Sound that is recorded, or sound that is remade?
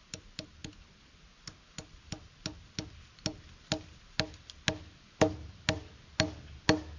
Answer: recorded